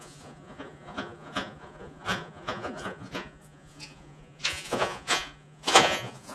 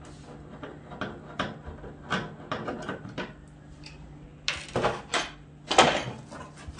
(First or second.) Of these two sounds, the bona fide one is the second